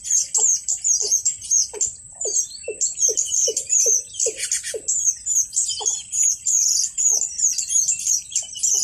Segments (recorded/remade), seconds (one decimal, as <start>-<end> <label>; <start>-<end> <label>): 0.0-8.8 recorded

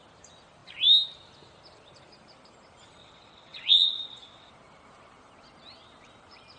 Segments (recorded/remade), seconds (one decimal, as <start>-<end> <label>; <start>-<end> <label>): 0.0-3.0 recorded; 3.0-4.5 remade; 4.5-6.6 recorded

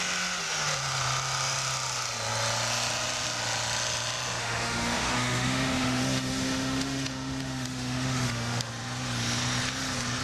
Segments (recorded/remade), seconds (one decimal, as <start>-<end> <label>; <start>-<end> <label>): 0.0-4.4 recorded; 4.4-8.7 remade; 8.7-10.2 recorded

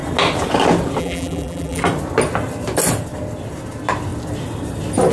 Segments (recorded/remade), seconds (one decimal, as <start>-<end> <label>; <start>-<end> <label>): 0.0-1.0 recorded; 1.0-1.8 remade; 1.8-5.1 recorded

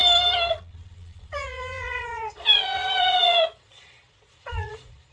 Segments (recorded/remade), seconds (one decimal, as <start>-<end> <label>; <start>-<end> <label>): 0.0-0.5 recorded; 0.5-5.1 remade

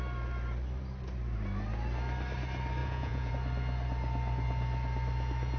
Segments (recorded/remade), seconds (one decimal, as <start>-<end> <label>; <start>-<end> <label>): 0.0-2.8 recorded; 2.8-3.3 remade; 3.3-5.6 recorded

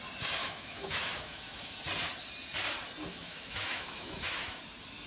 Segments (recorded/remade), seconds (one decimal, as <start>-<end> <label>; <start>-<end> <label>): 0.0-0.4 recorded; 0.4-1.8 remade; 1.8-3.1 recorded; 3.1-4.6 remade; 4.6-5.1 recorded

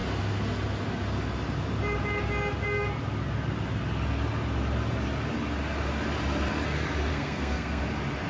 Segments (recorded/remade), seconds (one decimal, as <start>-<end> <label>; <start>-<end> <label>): 0.0-7.1 recorded; 7.1-7.8 remade; 7.8-8.3 recorded